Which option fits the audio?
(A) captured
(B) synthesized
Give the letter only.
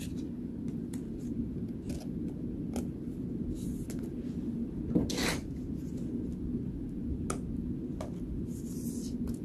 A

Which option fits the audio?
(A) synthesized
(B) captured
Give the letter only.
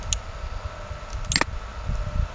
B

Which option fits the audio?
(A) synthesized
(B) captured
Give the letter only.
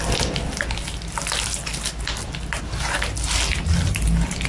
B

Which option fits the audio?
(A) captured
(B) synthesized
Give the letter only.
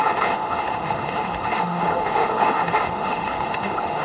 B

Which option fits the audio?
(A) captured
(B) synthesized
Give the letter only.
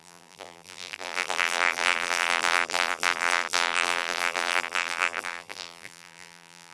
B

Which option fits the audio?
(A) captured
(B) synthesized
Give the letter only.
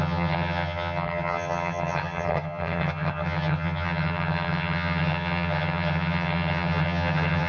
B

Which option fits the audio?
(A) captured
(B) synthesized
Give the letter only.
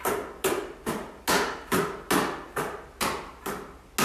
A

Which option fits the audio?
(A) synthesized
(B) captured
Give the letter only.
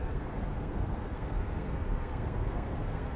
A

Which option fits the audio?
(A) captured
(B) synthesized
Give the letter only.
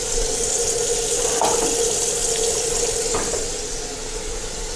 A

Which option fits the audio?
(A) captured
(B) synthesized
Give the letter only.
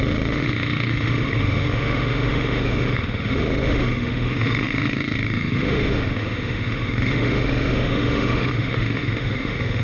B